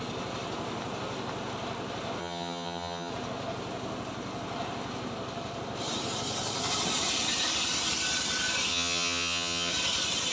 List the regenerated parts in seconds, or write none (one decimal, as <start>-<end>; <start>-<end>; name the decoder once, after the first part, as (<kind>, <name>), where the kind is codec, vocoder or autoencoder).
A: 2.2-3.1 (vocoder, HiFi-GAN); 8.7-9.7